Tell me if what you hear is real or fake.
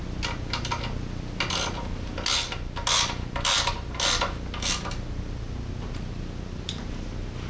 real